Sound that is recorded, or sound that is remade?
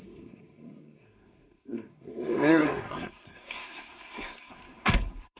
remade